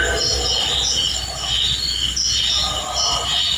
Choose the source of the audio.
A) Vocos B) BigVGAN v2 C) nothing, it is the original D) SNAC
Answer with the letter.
C